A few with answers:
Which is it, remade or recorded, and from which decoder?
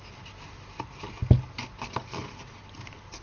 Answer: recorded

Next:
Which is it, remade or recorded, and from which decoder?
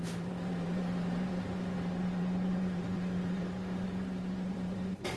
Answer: remade, vocoder, BigVGAN v2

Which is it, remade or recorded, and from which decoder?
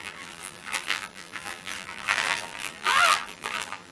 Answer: remade, vocoder, BigVGAN v2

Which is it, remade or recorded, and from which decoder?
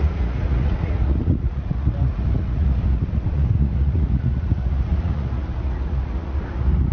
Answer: remade, vocoder, Vocos